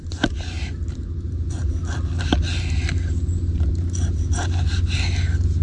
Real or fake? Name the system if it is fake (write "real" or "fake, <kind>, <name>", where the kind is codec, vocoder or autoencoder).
real